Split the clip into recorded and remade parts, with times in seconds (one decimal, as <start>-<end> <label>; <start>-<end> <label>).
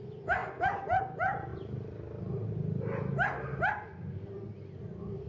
0.0-5.3 recorded